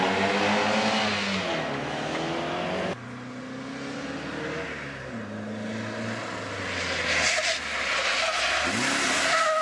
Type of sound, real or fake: real